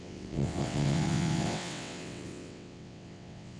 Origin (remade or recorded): remade